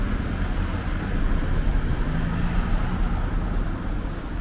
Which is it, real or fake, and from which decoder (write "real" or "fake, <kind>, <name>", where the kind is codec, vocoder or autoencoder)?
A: real